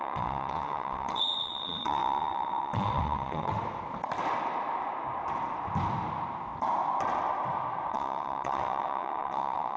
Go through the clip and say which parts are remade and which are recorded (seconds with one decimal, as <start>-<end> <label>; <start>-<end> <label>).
0.0-3.5 remade; 3.5-7.9 recorded; 7.9-9.8 remade